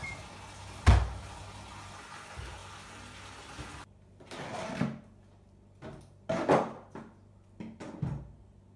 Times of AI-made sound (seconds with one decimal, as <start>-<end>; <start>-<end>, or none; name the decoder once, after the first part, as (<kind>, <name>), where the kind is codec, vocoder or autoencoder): none